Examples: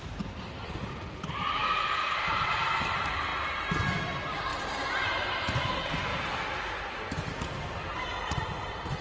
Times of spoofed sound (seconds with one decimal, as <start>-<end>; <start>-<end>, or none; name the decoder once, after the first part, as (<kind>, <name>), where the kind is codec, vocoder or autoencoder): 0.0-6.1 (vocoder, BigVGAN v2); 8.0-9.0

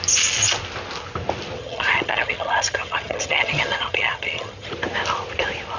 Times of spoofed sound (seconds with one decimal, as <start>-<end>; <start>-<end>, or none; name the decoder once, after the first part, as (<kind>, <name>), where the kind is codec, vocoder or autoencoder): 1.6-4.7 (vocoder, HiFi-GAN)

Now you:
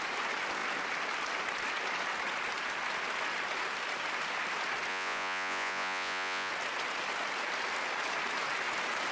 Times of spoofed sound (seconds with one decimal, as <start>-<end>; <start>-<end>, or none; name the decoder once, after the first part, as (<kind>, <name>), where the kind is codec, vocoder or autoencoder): 4.9-6.5 (vocoder, Vocos)